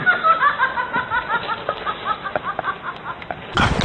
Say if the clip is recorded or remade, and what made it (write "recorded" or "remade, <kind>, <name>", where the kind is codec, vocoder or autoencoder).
recorded